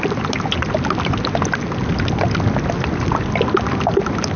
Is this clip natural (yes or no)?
yes